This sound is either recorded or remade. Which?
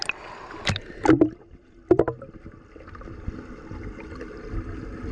recorded